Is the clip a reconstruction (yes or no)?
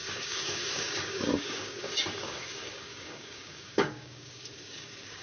yes